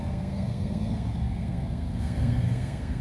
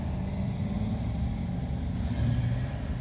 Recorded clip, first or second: second